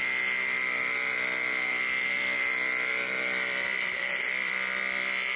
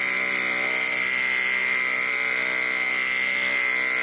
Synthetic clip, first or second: first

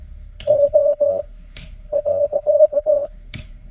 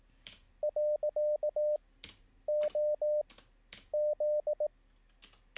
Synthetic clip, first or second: first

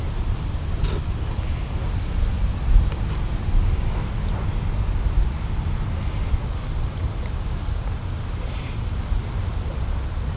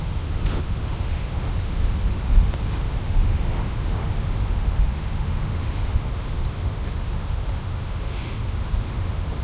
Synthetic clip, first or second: second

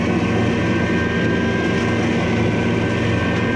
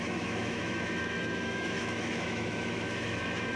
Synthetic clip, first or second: second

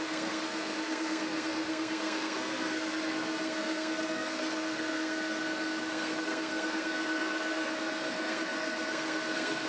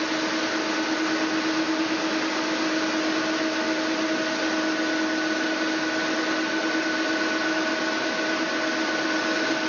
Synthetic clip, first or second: first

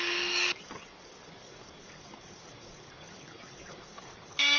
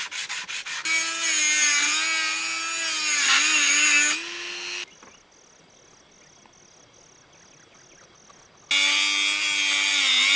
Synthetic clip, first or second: first